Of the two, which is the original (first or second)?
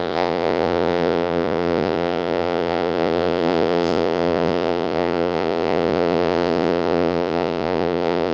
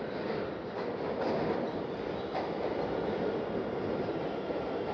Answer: second